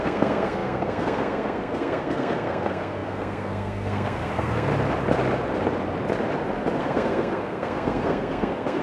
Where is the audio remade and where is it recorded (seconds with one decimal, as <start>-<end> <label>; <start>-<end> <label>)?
0.0-4.7 remade; 4.7-6.8 recorded; 6.8-8.8 remade